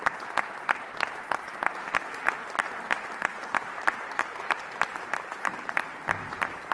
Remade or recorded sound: remade